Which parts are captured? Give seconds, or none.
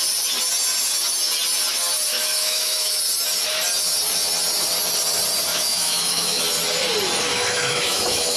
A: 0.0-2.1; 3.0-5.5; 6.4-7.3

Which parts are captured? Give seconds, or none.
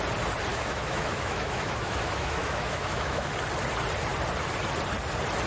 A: 0.0-0.5; 3.3-5.5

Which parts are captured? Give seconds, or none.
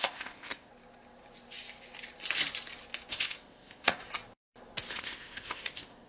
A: 0.7-3.1; 4.0-4.9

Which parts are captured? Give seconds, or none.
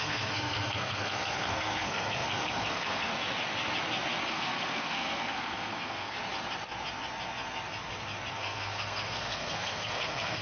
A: 3.1-4.3; 6.2-8.3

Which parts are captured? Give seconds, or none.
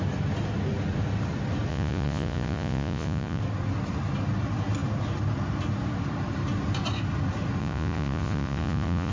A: 0.0-1.7; 3.4-7.6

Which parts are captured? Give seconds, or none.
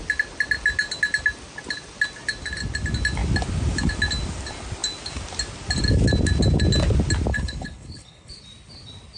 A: 0.0-7.3; 8.3-9.2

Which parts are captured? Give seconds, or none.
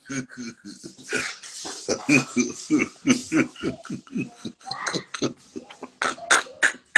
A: 0.0-2.0; 2.5-7.0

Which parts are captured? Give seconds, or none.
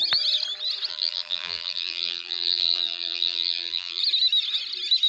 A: 0.0-0.9; 4.0-5.1